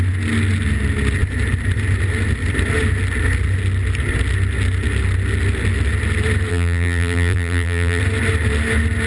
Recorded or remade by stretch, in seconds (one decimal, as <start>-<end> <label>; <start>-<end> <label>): 0.0-6.5 recorded; 6.5-8.0 remade; 8.0-9.1 recorded